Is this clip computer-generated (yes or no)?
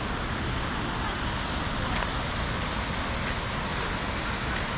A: no